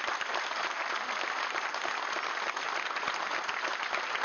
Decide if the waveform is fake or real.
real